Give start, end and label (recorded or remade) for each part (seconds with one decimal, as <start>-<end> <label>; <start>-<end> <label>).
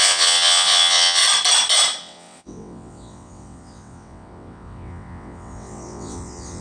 0.0-1.2 remade; 1.2-2.0 recorded; 2.0-6.6 remade